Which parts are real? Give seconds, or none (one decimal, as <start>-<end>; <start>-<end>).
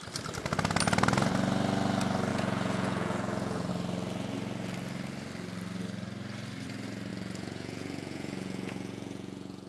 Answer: 0.0-2.3; 3.7-7.1